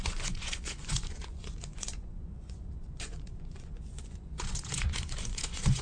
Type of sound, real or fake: fake